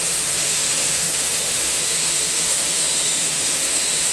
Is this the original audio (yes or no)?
no